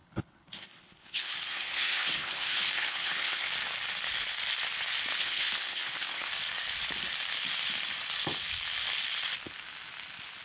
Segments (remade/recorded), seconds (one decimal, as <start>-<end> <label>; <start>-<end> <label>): 0.0-3.5 remade; 3.5-5.1 recorded; 5.1-6.3 remade; 6.3-10.4 recorded